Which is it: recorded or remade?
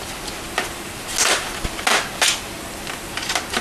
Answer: recorded